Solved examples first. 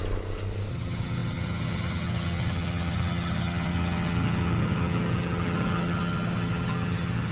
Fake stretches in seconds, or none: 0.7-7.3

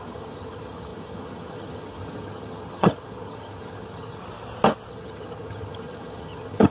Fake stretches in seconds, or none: 0.0-4.2; 4.9-6.7

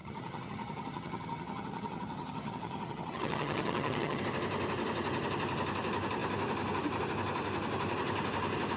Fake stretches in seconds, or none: 0.0-4.2

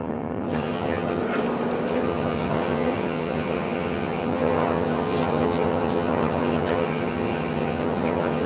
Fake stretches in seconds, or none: 0.0-1.2; 1.9-8.5

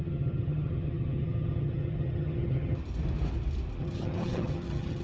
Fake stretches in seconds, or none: 0.0-2.8; 3.8-5.0